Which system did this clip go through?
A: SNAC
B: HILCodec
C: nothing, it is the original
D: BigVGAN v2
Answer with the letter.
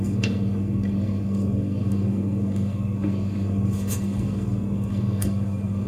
A